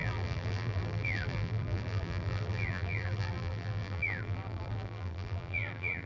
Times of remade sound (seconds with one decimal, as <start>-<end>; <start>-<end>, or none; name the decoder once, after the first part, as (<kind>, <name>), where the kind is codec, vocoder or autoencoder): 0.0-6.1 (vocoder, BigVGAN v2)